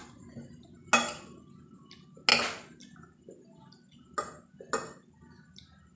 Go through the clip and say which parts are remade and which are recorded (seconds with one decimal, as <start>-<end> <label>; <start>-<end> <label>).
0.0-6.0 recorded